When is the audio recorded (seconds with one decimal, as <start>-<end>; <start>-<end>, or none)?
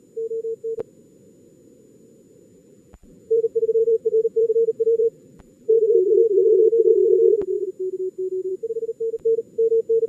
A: 0.0-2.5; 6.9-10.1